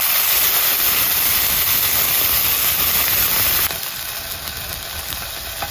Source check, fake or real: real